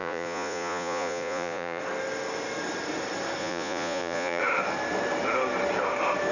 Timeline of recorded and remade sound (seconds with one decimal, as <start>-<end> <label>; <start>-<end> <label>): 0.0-1.8 remade; 1.8-3.4 recorded; 3.4-4.4 remade; 4.4-6.3 recorded